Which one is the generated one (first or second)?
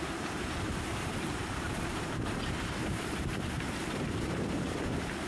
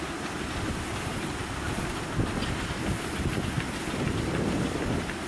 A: first